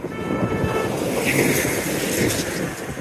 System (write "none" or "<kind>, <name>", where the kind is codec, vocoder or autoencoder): none